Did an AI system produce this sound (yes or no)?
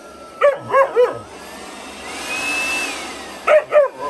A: no